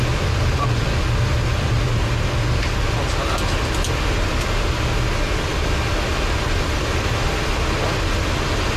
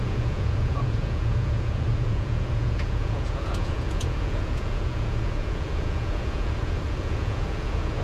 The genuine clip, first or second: first